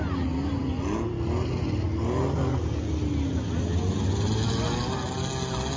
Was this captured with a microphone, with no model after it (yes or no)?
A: yes